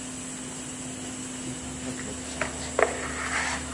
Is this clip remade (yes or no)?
no